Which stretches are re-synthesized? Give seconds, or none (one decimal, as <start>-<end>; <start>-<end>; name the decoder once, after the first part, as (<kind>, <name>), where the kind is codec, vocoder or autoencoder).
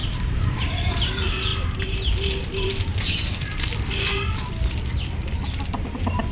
0.0-1.5 (vocoder, BigVGAN v2); 2.4-3.7